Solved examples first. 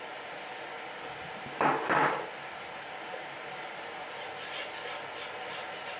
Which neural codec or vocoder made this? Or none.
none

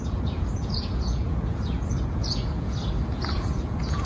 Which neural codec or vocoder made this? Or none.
vocoder, Vocos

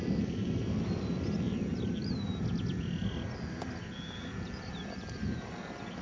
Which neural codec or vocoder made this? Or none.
none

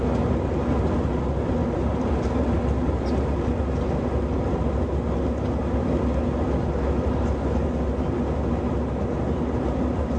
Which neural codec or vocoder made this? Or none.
none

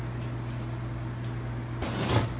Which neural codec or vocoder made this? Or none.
none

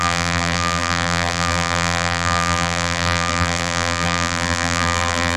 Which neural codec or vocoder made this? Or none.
vocoder, BigVGAN v2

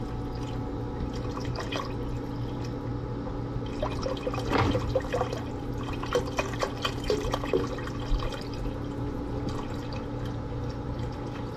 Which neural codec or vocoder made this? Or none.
none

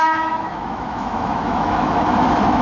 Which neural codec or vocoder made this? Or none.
autoencoder, DAC-VAE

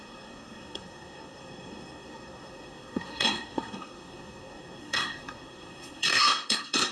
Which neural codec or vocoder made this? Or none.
codec, SNAC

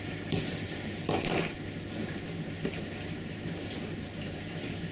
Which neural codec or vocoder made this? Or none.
vocoder, BigVGAN v2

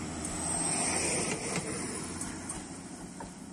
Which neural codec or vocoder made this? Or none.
none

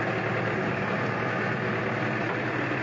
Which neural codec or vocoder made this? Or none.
none